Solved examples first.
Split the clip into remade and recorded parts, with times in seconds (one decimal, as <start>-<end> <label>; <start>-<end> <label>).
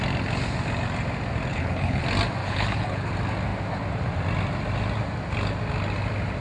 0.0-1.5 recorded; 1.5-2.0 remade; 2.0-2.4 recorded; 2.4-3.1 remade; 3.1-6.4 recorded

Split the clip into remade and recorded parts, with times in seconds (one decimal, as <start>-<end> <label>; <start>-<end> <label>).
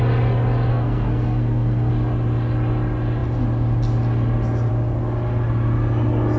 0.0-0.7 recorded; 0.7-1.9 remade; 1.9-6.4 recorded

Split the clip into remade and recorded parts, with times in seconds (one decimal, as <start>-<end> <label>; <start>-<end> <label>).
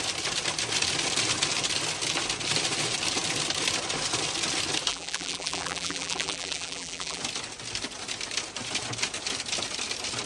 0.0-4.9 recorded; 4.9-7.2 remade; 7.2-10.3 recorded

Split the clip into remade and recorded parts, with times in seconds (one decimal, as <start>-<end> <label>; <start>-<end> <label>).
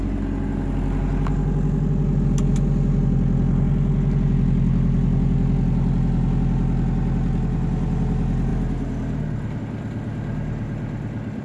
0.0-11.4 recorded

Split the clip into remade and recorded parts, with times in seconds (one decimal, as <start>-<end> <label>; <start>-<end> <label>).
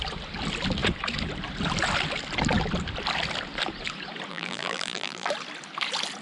0.0-4.3 recorded; 4.3-5.3 remade; 5.3-6.2 recorded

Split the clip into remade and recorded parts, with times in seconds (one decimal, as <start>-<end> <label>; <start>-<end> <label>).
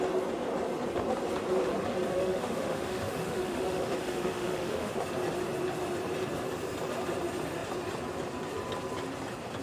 0.0-2.1 recorded; 2.1-4.9 remade; 4.9-9.6 recorded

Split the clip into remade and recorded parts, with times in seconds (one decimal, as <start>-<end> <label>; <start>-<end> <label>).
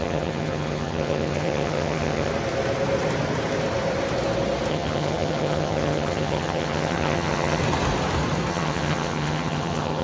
0.0-2.3 remade; 2.3-4.7 recorded; 4.7-7.6 remade; 7.6-8.5 recorded; 8.5-10.0 remade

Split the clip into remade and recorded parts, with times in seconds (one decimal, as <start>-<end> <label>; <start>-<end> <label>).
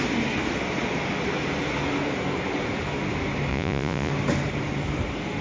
0.0-3.5 recorded; 3.5-4.1 remade; 4.1-5.4 recorded